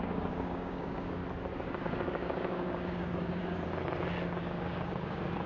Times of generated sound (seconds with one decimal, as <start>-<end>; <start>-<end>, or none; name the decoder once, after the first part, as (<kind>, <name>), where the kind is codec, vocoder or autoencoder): 0.0-1.2 (codec, DAC); 1.8-3.4; 4.4-5.5